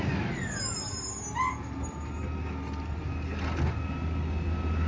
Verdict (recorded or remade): recorded